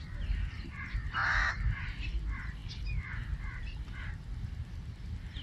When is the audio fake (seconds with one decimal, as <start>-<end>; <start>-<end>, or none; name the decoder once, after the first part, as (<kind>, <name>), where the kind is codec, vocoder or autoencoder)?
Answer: 0.0-1.2 (vocoder, BigVGAN v2); 1.8-2.6; 4.0-5.4